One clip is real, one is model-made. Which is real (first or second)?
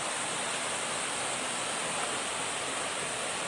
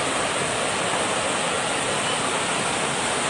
second